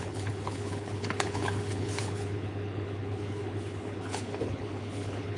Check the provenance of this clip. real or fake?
fake